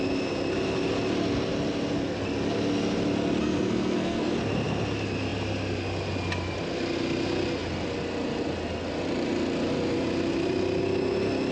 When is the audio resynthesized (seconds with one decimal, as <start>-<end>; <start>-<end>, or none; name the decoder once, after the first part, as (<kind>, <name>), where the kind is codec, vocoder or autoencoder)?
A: 3.4-4.3 (codec, SNAC)